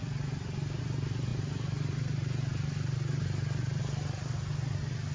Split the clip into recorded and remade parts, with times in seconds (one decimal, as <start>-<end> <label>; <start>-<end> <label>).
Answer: 0.0-5.1 recorded